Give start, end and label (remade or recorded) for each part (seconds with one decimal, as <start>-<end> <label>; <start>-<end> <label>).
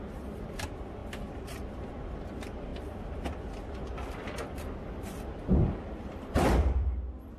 0.0-7.4 remade